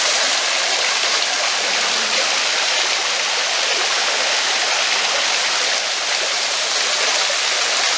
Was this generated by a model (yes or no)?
no